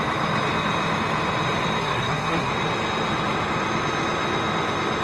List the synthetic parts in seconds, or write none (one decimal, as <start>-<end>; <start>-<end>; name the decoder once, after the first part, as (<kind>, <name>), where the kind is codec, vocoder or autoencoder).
1.8-2.5 (codec, SNAC)